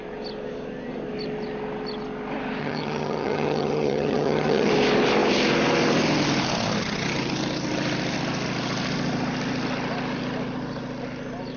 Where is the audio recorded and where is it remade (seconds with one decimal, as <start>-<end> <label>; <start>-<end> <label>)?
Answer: 0.0-2.6 recorded; 2.6-4.7 remade; 4.7-11.6 recorded